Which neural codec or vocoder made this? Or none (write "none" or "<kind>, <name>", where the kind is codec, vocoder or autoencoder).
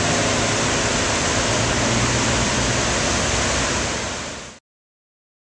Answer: none